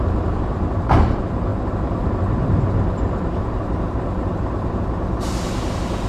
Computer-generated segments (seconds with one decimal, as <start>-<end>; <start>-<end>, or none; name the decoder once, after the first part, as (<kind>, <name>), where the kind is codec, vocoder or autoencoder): none